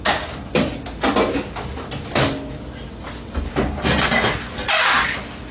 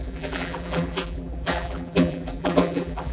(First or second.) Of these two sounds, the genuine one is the first